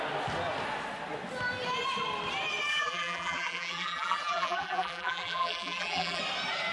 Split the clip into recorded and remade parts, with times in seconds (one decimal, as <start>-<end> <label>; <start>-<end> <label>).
0.0-2.7 recorded; 2.7-6.2 remade; 6.2-6.7 recorded